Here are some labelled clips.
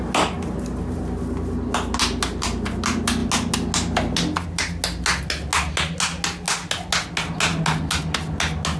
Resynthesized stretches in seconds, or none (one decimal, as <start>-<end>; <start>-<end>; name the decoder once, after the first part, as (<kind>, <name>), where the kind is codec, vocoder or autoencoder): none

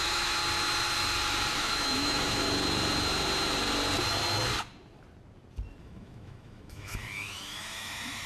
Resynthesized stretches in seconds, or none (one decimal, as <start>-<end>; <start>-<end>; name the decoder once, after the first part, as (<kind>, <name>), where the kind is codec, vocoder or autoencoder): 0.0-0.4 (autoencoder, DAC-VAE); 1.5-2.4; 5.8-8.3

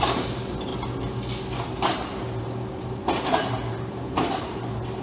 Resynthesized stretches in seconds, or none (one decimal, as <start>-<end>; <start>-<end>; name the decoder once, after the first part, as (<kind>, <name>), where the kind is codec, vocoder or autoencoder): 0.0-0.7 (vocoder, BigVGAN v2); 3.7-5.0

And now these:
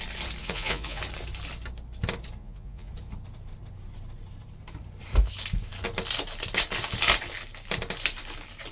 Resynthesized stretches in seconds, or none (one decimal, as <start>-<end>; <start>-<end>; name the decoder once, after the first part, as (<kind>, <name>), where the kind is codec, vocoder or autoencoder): 0.4-1.0 (vocoder, Vocos); 2.4-2.9